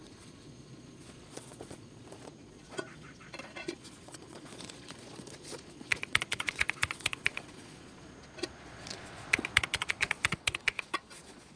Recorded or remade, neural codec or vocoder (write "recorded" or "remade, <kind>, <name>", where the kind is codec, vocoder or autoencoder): remade, vocoder, Vocos